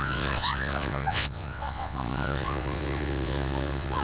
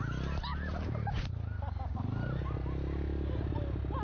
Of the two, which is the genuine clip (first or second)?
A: second